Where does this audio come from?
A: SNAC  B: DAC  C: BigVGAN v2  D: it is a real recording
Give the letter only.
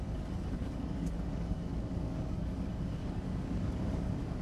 B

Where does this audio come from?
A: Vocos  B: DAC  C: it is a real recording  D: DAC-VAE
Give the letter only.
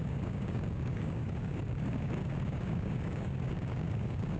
B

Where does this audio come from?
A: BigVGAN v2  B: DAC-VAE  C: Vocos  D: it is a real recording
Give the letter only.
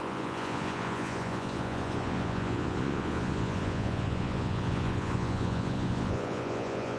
C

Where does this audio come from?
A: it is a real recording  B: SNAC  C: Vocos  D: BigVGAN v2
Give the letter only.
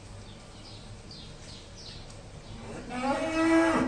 A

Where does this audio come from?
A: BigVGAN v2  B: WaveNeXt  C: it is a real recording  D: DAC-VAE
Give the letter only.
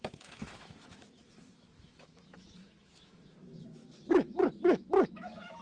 D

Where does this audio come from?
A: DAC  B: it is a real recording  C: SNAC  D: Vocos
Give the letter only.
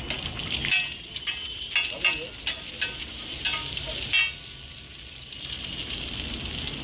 B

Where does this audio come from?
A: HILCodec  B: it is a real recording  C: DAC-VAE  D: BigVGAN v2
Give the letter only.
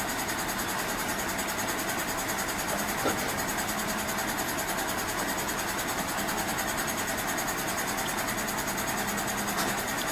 B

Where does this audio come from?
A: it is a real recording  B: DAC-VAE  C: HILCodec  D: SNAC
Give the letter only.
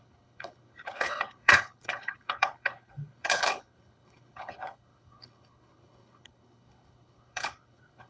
C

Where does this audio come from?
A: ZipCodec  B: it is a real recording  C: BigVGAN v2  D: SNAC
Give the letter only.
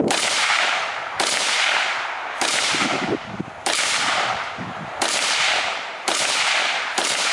C